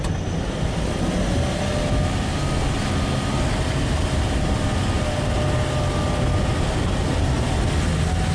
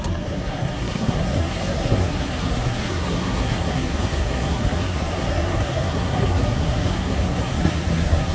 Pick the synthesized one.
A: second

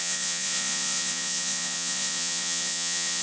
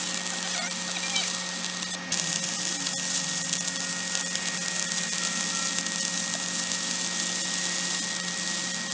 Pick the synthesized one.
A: first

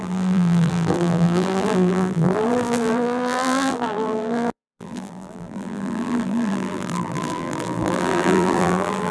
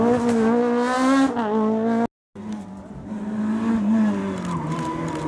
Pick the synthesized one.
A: first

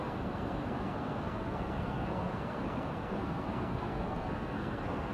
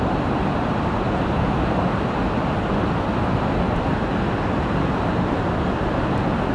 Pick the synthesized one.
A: first